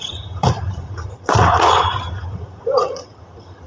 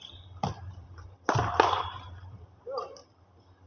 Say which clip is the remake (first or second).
first